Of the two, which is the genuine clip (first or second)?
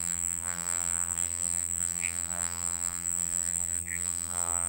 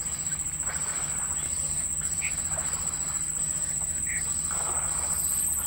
second